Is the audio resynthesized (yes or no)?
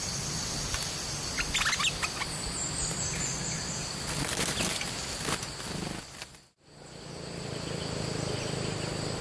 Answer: no